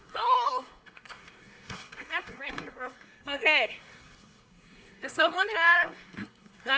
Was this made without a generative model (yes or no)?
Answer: no